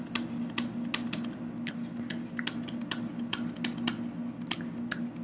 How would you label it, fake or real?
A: real